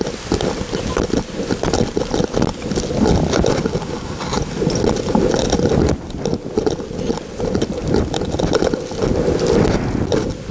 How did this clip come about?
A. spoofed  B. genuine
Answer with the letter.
B